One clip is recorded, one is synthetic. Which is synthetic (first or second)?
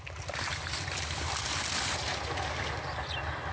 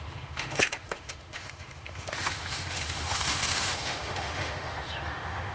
second